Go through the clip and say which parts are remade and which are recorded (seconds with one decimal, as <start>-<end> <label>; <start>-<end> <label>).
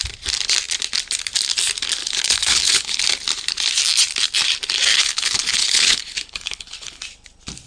0.0-2.0 recorded; 2.0-3.0 remade; 3.0-4.9 recorded; 4.9-7.0 remade; 7.0-7.7 recorded